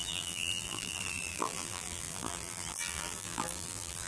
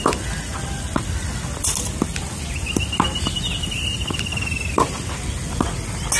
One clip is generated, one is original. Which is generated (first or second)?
first